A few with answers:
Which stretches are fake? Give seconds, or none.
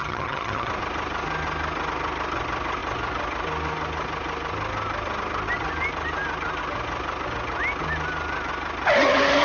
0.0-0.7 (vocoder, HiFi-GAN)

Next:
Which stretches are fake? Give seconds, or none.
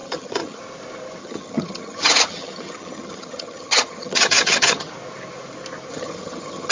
0.0-0.6 (vocoder, HiFi-GAN); 1.2-4.9; 5.9-6.7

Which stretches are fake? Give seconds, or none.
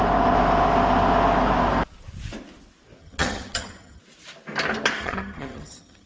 3.0-4.0 (vocoder, HiFi-GAN); 5.0-6.1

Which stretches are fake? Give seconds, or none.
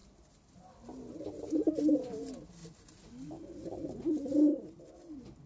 none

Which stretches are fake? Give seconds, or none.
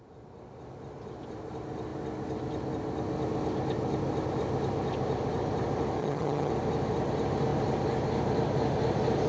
6.0-6.5 (vocoder, HiFi-GAN)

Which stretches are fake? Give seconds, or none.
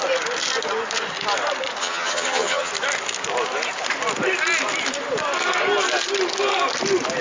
1.8-2.7 (vocoder, HiFi-GAN)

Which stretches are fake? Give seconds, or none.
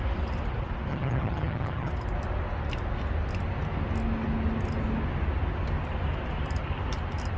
0.9-1.9 (vocoder, HiFi-GAN)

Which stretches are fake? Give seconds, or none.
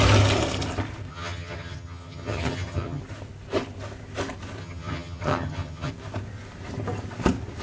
1.1-3.0 (vocoder, HiFi-GAN); 4.6-5.9